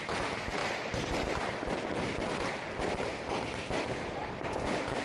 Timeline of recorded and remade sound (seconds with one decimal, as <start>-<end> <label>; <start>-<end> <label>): 0.0-5.0 recorded